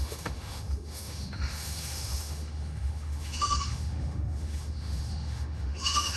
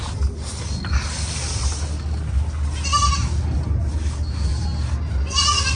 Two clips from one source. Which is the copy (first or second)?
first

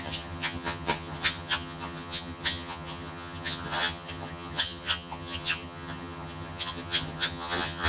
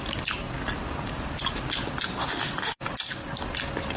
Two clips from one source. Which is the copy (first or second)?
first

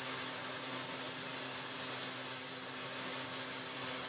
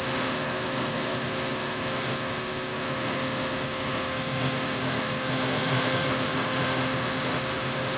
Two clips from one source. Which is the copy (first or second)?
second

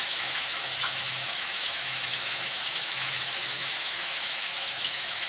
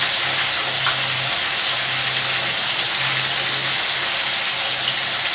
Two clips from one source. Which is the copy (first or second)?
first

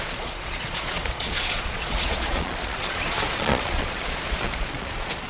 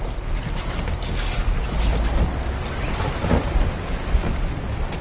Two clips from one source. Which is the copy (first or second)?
first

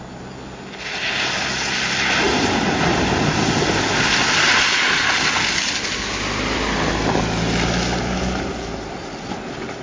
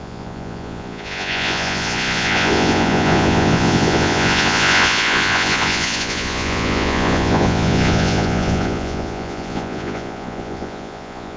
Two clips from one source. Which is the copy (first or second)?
second